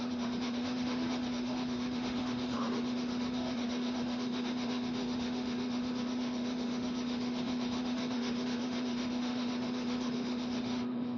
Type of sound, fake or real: fake